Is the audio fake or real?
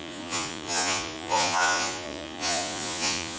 fake